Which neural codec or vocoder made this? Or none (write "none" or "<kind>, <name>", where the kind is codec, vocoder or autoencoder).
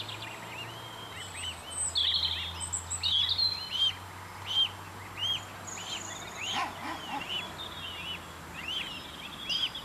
none